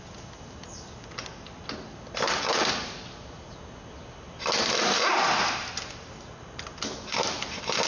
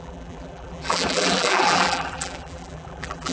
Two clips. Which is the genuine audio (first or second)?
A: first